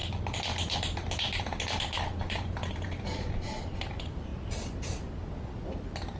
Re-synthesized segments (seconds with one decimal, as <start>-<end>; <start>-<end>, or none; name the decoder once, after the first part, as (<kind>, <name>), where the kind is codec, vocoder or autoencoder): 0.0-4.3 (vocoder, BigVGAN v2); 5.6-6.2